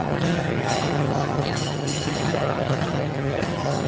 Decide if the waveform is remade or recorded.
remade